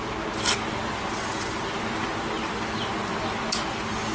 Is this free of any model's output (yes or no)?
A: yes